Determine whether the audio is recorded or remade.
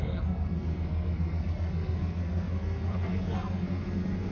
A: remade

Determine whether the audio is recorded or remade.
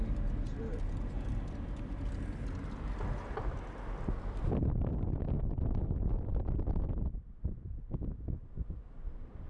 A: recorded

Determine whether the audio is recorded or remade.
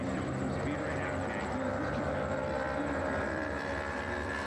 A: recorded